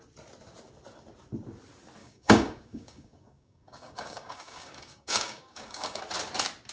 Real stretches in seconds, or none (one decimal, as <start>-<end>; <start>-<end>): 0.0-2.0; 6.0-6.7